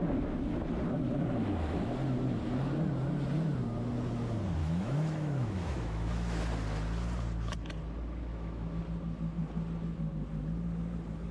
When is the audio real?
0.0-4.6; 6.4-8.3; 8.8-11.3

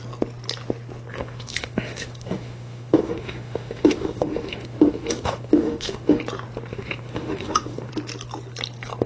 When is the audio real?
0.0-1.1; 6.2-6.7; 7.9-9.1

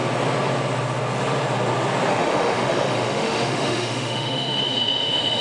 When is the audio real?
0.0-2.1

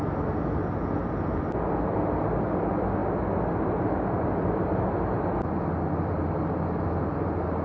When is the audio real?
0.0-7.6

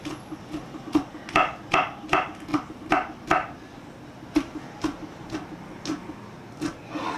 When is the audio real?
0.0-7.2

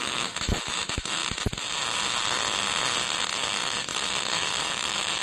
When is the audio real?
1.2-3.5

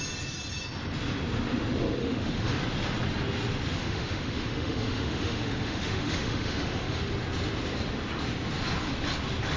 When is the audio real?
0.0-2.0; 2.6-3.8; 7.0-9.6